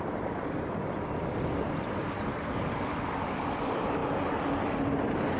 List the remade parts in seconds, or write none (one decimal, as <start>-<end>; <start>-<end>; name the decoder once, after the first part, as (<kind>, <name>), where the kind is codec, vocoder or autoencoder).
0.0-2.3 (vocoder, BigVGAN v2); 3.0-5.4